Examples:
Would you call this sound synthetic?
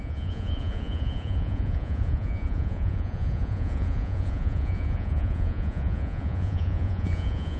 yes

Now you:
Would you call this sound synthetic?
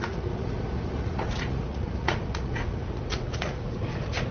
yes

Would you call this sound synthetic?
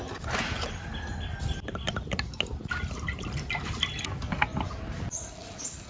no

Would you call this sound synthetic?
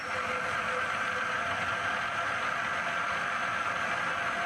no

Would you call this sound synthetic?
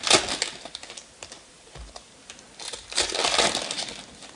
no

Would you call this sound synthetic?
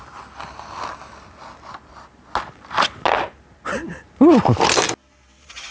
no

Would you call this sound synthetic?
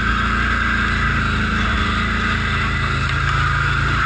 no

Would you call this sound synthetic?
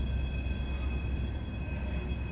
no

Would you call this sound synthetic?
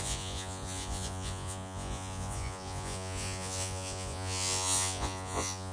yes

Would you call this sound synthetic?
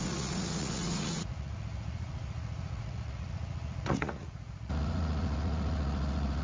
yes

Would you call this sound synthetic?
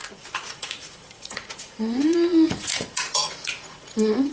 yes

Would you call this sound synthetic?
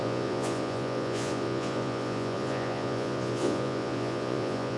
yes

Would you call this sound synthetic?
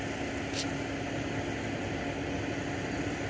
no